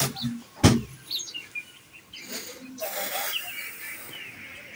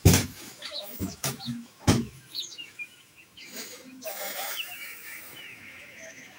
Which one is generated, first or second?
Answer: second